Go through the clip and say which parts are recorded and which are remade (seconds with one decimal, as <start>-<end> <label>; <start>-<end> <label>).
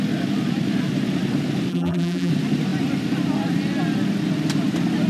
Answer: 0.0-1.7 recorded; 1.7-2.3 remade; 2.3-5.1 recorded